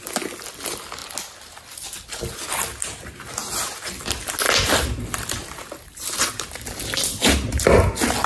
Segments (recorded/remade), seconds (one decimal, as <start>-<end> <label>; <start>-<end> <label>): 0.0-8.3 recorded